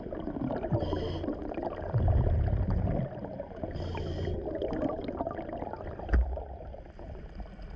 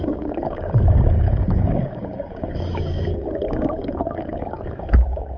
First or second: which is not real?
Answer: second